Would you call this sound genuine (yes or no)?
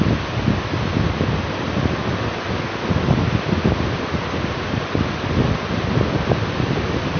yes